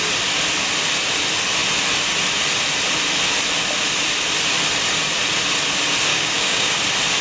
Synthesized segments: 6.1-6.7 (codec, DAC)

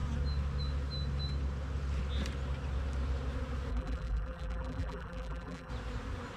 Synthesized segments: 3.7-5.7 (vocoder, BigVGAN v2)